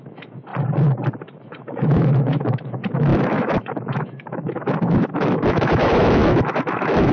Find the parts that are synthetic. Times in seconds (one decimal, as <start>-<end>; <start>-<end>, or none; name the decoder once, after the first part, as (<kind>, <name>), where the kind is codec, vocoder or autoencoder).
0.0-0.5 (autoencoder, DAC-VAE); 1.2-7.1